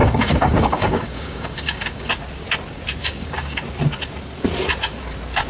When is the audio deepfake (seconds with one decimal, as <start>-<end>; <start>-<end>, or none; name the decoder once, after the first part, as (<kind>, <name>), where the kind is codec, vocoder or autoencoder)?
0.0-2.1 (codec, DAC); 3.0-3.6